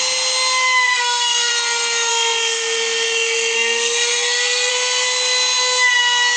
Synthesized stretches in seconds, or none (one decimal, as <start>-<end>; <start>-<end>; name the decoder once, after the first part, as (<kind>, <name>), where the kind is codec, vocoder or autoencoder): 0.9-1.5 (codec, SNAC); 2.1-4.7